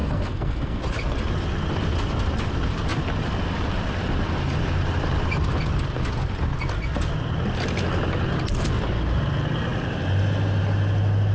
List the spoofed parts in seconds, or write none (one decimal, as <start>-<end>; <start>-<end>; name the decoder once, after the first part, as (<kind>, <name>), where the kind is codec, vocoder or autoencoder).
0.0-0.8 (codec, SNAC)